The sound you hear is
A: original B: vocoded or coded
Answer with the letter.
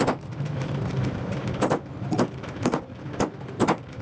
B